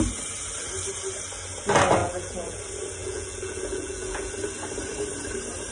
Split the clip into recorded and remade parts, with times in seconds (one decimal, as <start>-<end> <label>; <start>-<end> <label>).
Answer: 0.0-2.0 recorded; 2.0-2.6 remade; 2.6-3.0 recorded; 3.0-4.3 remade; 4.3-5.7 recorded